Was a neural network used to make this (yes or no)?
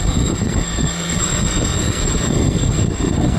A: yes